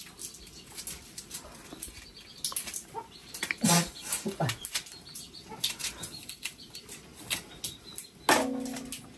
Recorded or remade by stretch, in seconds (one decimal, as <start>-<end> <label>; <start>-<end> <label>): 0.0-1.0 recorded; 1.0-2.1 remade; 2.1-3.2 recorded; 3.2-3.9 remade; 3.9-5.8 recorded; 5.8-7.2 remade; 7.2-9.2 recorded